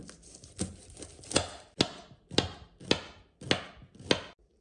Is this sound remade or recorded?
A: recorded